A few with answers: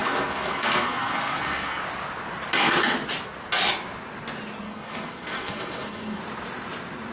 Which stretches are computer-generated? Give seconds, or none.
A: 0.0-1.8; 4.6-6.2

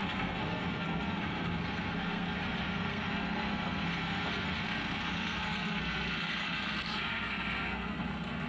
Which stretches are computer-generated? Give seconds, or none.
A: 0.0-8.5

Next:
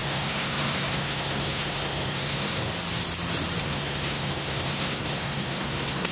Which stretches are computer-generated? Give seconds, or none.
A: 0.0-2.7; 3.6-6.1